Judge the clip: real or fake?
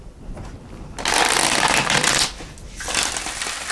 real